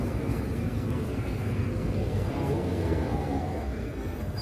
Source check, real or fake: fake